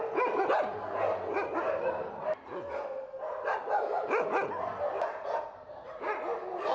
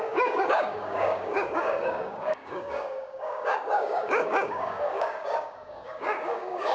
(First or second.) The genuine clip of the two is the first